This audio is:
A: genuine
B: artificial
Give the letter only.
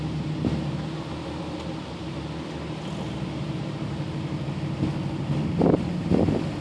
A